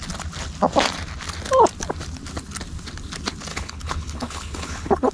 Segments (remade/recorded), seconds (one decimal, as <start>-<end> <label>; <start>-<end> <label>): 0.0-3.5 recorded; 3.5-5.1 remade